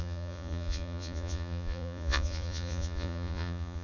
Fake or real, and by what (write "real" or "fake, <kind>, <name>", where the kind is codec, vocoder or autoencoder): fake, vocoder, Vocos